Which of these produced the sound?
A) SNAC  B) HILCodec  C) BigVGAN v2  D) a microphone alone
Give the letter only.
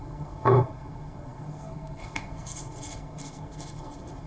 A